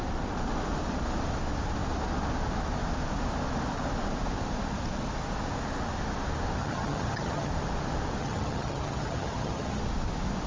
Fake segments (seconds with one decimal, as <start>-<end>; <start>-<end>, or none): 6.6-7.5; 8.2-9.8